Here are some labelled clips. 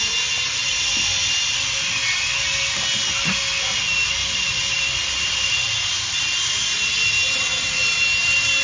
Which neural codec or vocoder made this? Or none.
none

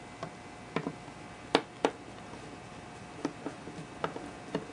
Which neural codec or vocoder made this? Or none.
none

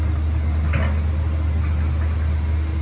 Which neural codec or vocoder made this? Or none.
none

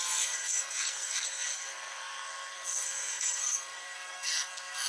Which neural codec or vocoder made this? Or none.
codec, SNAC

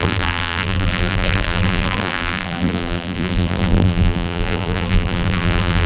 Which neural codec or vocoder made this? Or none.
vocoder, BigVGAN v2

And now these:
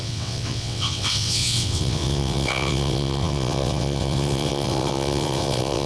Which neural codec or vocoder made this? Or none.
vocoder, WaveNeXt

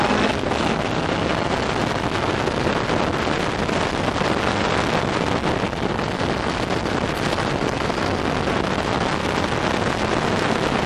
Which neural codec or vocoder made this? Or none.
none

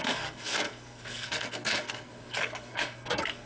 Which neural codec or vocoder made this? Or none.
codec, SNAC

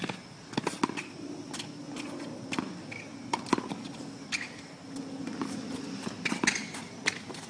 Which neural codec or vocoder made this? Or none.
none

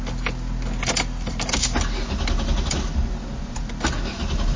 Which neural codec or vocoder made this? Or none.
none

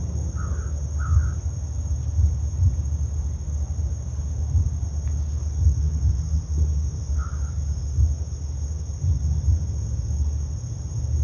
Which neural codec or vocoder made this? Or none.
none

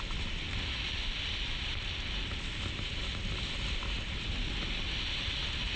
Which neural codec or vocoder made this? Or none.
none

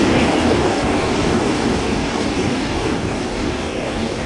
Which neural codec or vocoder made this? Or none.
codec, DAC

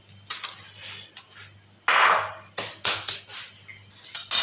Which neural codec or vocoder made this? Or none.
none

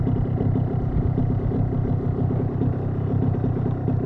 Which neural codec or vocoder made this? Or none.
none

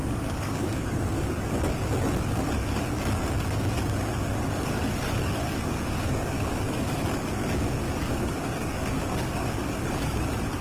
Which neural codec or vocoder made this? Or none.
codec, DAC